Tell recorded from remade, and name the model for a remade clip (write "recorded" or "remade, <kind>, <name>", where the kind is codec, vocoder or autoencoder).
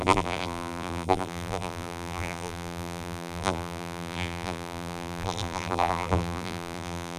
remade, vocoder, BigVGAN v2